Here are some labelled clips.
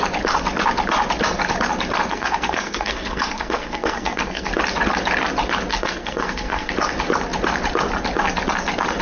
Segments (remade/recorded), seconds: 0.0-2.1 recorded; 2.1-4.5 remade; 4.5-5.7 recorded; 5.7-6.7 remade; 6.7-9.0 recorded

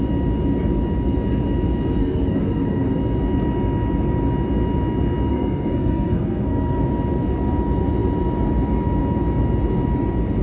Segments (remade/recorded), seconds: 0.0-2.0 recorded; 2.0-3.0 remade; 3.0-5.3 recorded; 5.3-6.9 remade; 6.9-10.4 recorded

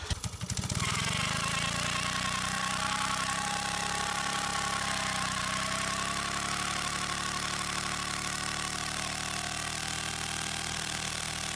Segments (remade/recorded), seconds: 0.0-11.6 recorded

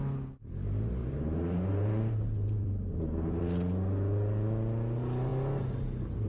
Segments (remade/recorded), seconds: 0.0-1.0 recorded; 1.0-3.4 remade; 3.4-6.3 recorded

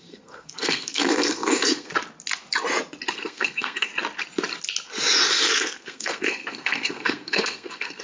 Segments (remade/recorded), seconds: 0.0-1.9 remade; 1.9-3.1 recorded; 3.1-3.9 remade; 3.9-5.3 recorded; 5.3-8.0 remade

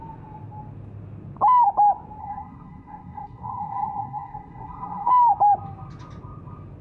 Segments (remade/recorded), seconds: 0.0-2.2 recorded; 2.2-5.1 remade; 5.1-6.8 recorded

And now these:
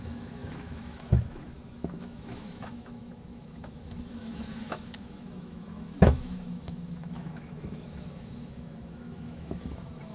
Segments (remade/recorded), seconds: 0.0-10.1 remade